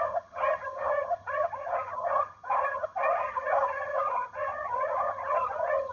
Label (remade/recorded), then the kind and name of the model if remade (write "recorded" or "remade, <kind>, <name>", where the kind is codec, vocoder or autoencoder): remade, vocoder, HiFi-GAN